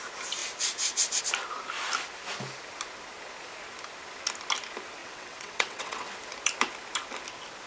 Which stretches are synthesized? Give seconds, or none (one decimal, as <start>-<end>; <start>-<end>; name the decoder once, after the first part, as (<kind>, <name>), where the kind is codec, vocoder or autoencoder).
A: 5.0-6.1 (vocoder, WaveNeXt)